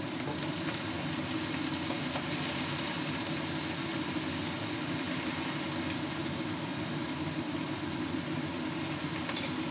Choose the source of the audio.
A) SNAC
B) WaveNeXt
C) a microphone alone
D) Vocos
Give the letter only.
C